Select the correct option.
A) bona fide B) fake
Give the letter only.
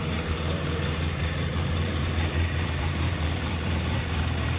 B